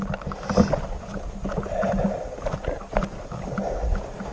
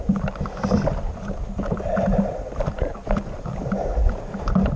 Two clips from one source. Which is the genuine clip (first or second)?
first